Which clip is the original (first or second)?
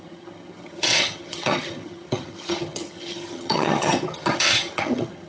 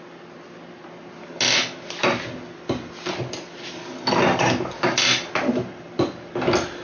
second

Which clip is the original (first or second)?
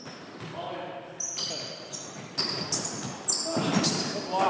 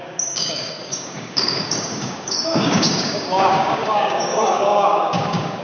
first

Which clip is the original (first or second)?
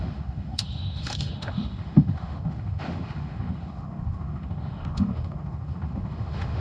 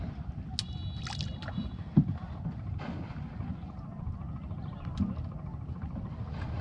second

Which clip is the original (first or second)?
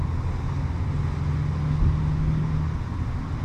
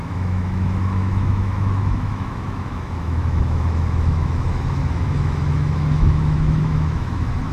first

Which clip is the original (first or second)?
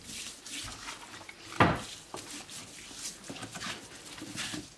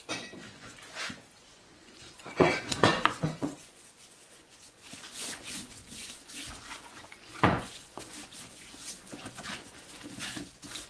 first